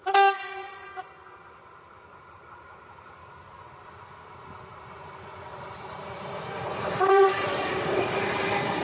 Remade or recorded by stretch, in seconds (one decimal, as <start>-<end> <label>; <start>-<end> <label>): 0.0-1.1 remade; 1.1-5.5 recorded; 5.5-8.2 remade; 8.2-8.8 recorded

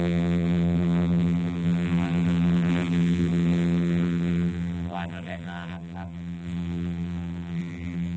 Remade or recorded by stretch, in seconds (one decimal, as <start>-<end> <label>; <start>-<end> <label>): 0.0-8.2 remade

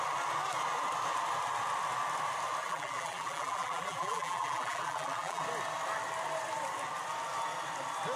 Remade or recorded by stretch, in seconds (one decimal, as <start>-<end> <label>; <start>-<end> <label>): 0.0-2.6 recorded; 2.6-5.4 remade; 5.4-8.2 recorded

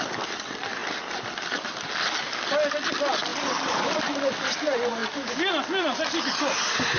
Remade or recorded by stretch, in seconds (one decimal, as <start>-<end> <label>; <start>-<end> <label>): 0.0-3.3 recorded; 3.3-3.9 remade; 3.9-7.0 recorded

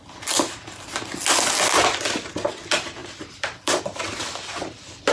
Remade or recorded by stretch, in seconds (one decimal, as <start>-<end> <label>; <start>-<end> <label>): 0.0-3.0 recorded; 3.0-3.8 remade; 3.8-5.1 recorded

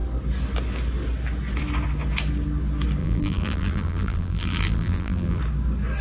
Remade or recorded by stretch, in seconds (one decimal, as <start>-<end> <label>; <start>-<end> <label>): 0.0-3.0 recorded; 3.0-5.4 remade; 5.4-6.0 recorded

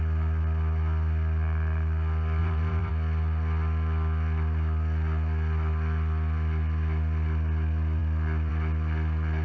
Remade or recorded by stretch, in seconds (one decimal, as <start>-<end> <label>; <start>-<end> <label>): 0.0-2.4 recorded; 2.4-2.9 remade; 2.9-9.4 recorded